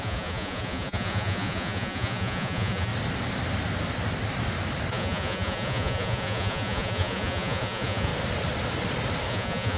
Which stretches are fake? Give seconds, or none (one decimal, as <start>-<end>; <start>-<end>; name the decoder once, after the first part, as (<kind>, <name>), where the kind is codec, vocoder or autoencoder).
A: 0.0-2.9 (vocoder, Vocos); 4.9-8.1; 9.3-9.8